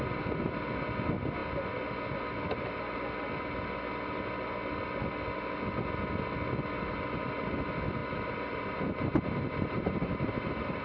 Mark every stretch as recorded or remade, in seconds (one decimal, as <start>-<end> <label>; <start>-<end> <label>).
0.0-8.0 recorded; 8.0-10.8 remade